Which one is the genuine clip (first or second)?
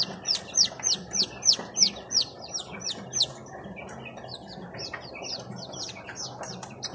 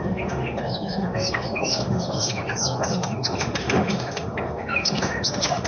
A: first